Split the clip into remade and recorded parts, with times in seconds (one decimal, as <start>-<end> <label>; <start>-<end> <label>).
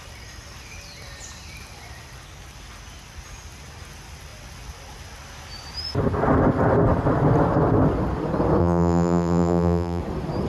0.0-8.6 recorded; 8.6-10.0 remade; 10.0-10.5 recorded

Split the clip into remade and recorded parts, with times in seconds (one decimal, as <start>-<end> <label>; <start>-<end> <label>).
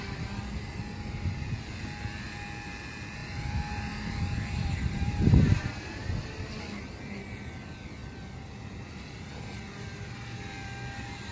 0.0-3.2 recorded; 3.2-6.0 remade; 6.0-11.3 recorded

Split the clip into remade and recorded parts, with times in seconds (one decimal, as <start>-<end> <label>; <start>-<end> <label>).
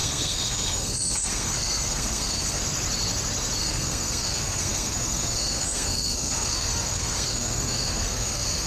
0.0-2.6 remade; 2.6-3.6 recorded; 3.6-8.7 remade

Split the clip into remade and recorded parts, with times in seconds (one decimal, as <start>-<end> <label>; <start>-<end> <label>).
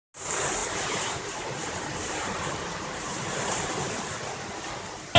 0.0-0.6 recorded; 0.6-3.7 remade; 3.7-5.2 recorded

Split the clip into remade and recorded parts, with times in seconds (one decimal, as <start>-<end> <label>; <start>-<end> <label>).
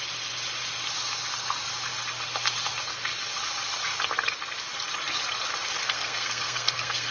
0.0-5.8 recorded; 5.8-7.1 remade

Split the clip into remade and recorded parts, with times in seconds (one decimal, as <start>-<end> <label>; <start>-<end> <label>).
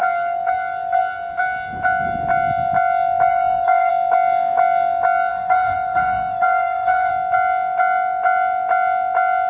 0.0-3.3 recorded; 3.3-3.9 remade; 3.9-5.3 recorded; 5.3-7.1 remade; 7.1-9.5 recorded